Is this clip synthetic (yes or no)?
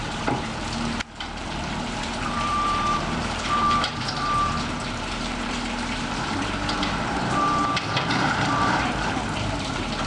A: yes